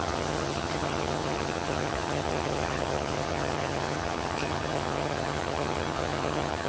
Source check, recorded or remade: remade